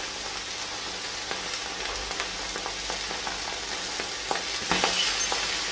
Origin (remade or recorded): recorded